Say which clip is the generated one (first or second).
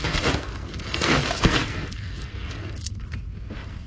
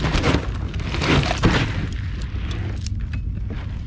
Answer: first